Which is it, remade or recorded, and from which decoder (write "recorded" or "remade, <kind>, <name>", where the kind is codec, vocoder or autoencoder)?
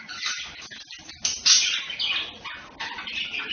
recorded